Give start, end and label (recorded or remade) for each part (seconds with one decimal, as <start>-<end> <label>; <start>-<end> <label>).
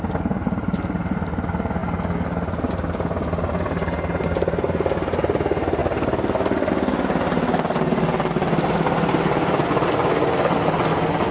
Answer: 0.0-11.3 recorded